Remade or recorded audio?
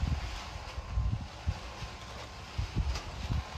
recorded